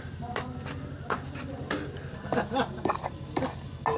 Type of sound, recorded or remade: recorded